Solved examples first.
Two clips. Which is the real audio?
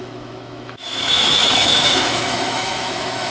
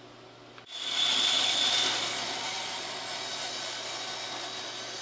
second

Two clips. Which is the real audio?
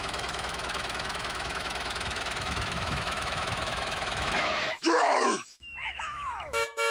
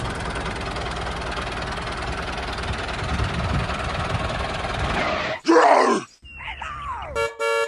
second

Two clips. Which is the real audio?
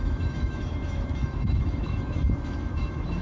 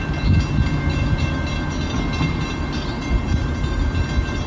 second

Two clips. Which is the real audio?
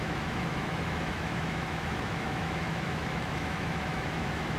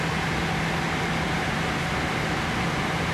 second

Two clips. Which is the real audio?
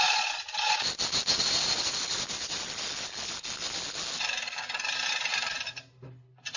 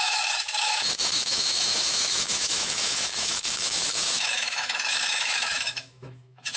first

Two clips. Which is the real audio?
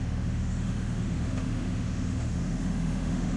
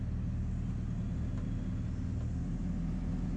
second